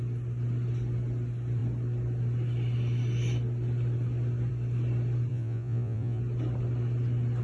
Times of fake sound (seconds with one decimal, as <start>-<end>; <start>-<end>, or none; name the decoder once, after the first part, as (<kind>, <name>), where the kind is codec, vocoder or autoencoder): 5.3-6.2 (vocoder, Vocos)